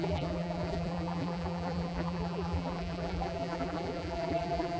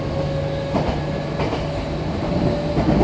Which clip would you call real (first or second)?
second